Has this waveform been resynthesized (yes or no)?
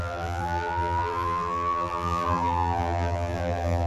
yes